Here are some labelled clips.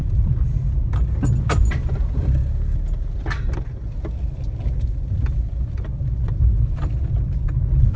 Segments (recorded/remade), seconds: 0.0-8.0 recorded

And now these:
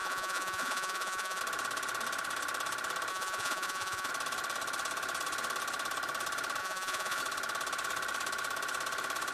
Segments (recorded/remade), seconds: 0.0-1.4 remade; 1.4-3.1 recorded; 3.1-4.1 remade; 4.1-6.6 recorded; 6.6-7.2 remade; 7.2-9.3 recorded